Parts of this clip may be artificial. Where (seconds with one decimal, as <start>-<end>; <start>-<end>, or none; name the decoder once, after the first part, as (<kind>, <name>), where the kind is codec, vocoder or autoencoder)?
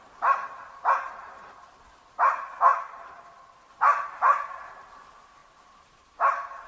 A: 2.7-3.7 (vocoder, BigVGAN v2); 5.4-6.7